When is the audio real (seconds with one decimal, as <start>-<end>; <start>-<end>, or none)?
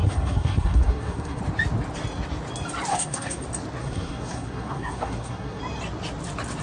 1.4-2.9; 3.4-3.8; 5.6-6.6